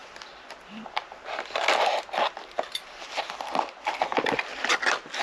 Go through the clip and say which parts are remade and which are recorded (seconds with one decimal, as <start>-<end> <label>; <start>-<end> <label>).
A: 0.0-3.1 remade; 3.1-4.1 recorded; 4.1-5.2 remade